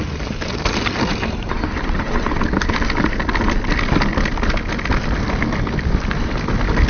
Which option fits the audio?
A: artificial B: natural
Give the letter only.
B